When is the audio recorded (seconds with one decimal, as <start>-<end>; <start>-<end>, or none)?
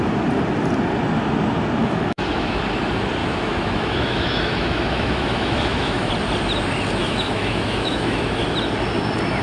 0.0-1.8; 2.6-3.2; 6.1-7.0; 8.4-9.4